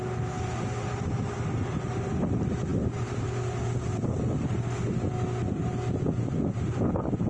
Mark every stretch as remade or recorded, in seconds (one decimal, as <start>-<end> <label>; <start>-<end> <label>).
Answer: 0.0-7.3 recorded

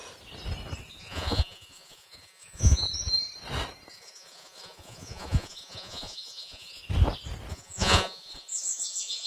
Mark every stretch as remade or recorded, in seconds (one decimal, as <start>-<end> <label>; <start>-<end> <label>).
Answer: 0.0-1.0 recorded; 1.0-2.8 remade; 2.8-3.9 recorded; 3.9-6.8 remade; 6.8-7.5 recorded; 7.5-9.3 remade

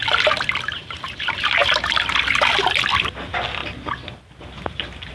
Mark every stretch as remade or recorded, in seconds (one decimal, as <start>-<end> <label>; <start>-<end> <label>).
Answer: 0.0-5.1 recorded

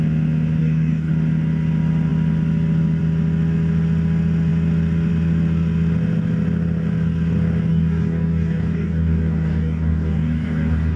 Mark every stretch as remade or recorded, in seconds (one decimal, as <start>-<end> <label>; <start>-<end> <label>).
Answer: 0.0-0.6 recorded; 0.6-1.1 remade; 1.1-7.7 recorded; 7.7-11.0 remade

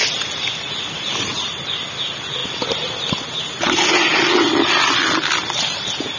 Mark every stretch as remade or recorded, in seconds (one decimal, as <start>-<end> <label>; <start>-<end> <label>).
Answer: 0.0-6.2 recorded

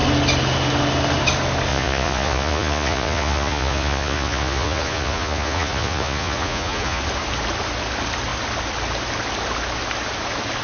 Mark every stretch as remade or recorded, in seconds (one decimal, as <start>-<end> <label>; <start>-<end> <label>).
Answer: 0.0-1.7 recorded; 1.7-7.0 remade; 7.0-10.6 recorded

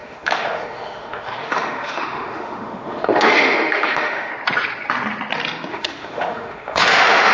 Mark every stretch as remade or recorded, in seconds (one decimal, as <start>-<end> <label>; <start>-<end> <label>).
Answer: 0.0-4.3 remade; 4.3-5.7 recorded; 5.7-7.3 remade

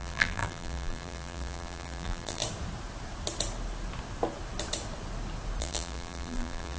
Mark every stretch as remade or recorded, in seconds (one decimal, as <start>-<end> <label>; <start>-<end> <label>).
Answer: 0.0-2.4 remade; 2.4-5.6 recorded; 5.6-6.8 remade